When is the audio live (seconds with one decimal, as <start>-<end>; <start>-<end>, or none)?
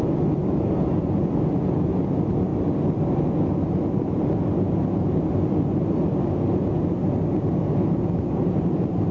0.0-9.1